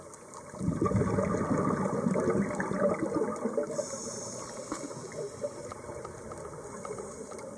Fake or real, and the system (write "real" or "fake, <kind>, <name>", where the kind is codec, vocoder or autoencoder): real